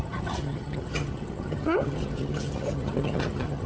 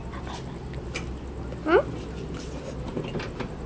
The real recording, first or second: second